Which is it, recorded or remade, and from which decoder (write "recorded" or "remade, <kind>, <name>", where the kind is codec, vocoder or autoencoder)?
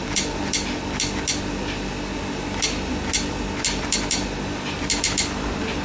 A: recorded